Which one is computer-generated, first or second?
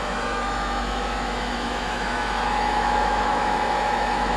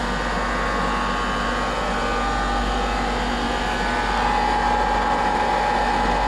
first